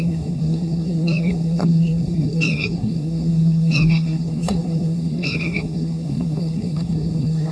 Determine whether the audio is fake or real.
fake